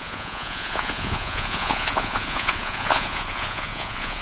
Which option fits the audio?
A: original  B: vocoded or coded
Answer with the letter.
B